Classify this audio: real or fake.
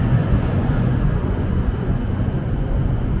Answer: fake